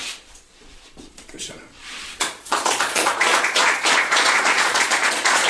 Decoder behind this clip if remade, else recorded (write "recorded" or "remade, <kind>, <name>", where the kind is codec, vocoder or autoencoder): remade, vocoder, Vocos